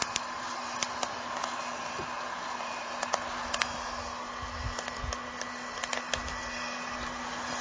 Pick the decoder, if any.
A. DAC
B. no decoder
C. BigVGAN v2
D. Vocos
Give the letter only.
B